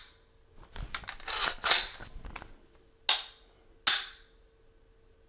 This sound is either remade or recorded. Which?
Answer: recorded